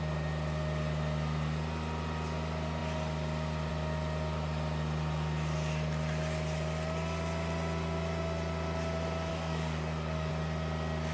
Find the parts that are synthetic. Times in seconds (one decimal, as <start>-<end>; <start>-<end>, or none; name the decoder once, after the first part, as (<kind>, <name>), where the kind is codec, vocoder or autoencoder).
9.3-10.3 (codec, DAC)